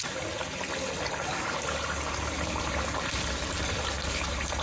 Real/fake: real